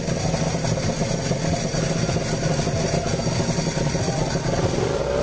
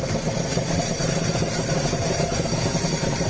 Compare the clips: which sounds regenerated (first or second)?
second